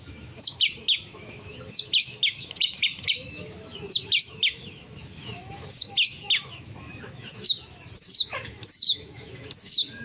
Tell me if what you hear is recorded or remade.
remade